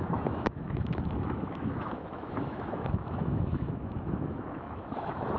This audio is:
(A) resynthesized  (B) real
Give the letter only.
A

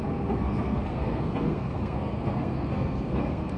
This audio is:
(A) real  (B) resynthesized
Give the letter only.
B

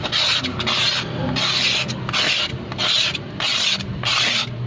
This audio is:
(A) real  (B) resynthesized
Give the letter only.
A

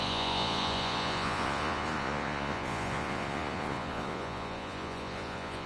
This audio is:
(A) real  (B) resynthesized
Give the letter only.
B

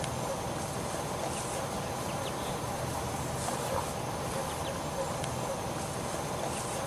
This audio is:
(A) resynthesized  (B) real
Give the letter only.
B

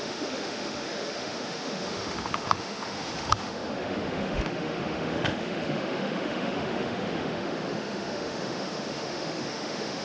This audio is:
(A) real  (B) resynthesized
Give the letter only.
B